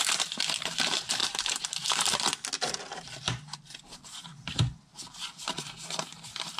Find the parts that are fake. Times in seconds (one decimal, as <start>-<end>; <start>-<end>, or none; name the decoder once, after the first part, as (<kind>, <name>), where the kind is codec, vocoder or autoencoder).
1.2-2.0 (vocoder, BigVGAN v2)